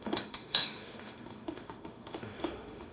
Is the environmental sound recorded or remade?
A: remade